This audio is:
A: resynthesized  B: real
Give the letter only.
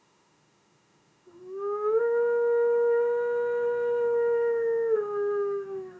A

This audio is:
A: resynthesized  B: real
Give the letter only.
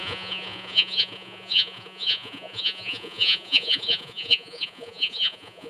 A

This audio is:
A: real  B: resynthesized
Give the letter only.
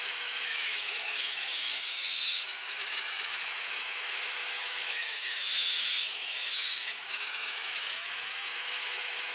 B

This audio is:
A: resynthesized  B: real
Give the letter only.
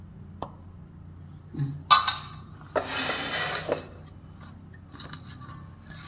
B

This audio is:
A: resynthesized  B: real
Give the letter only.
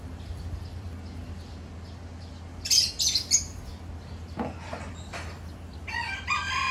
B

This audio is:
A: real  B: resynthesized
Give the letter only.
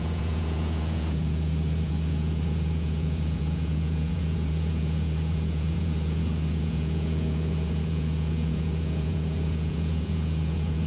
B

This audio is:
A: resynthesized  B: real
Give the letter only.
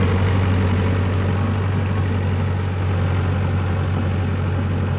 B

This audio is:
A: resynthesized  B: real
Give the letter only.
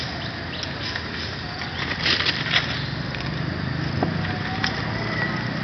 B